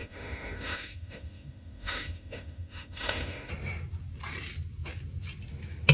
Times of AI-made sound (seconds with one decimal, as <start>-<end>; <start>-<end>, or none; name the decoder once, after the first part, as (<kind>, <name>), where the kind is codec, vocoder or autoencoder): 0.0-3.5 (autoencoder, DAC-VAE)